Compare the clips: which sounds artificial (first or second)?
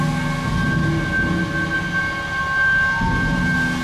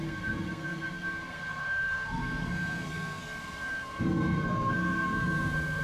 second